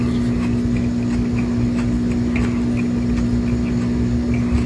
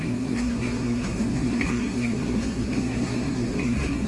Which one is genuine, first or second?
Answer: first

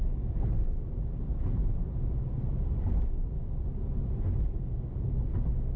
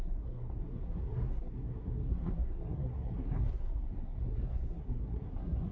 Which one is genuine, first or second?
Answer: first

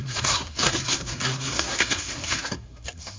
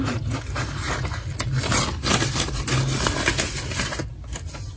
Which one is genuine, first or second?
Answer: second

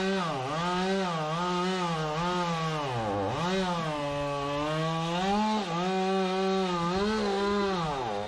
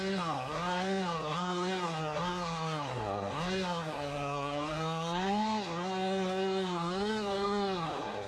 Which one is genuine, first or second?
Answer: first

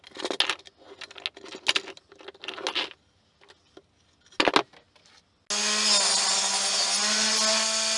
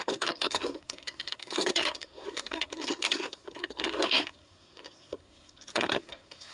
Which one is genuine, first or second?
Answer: first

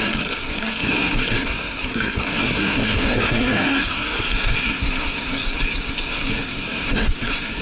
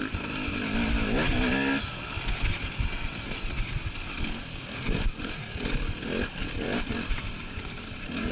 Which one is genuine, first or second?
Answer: second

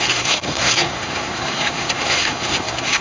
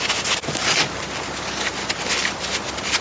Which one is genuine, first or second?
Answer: second